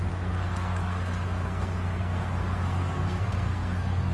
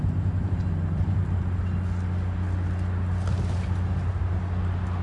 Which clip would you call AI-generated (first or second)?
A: first